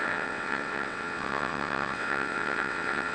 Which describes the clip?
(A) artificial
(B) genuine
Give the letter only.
A